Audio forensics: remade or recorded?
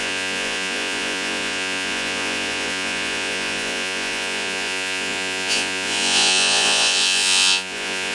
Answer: remade